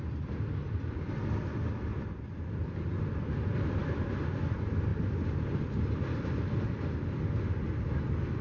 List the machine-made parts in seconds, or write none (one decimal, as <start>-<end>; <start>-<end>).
4.9-7.0